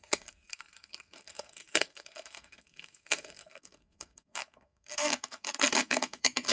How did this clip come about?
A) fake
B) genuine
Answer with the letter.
A